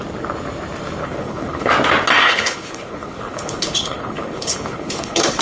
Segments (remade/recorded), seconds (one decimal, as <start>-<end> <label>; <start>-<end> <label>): 0.0-1.0 recorded; 1.0-1.7 remade; 1.7-2.2 recorded; 2.2-5.4 remade